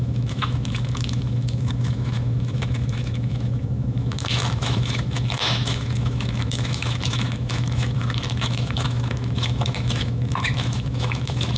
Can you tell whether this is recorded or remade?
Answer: remade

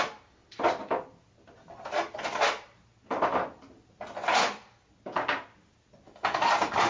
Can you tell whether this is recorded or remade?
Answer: recorded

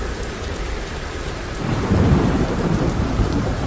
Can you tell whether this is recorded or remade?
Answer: remade